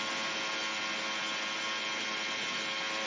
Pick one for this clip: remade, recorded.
recorded